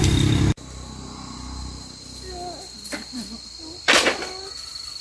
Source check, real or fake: fake